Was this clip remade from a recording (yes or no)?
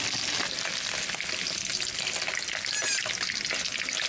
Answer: no